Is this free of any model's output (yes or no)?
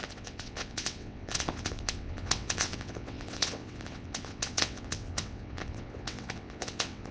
no